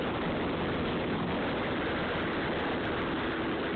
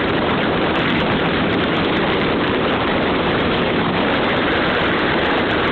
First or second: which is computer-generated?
second